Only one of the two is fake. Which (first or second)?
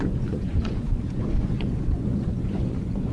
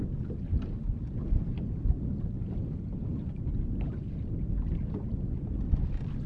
first